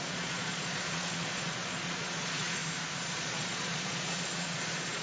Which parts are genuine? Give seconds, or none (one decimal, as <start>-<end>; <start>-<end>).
2.6-3.1